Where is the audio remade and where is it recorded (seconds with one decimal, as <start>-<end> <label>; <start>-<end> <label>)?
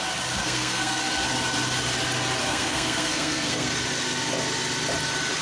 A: 0.0-0.4 recorded; 0.4-1.0 remade; 1.0-2.4 recorded; 2.4-3.7 remade; 3.7-5.4 recorded